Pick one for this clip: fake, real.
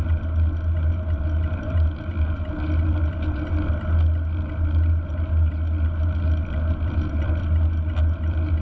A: real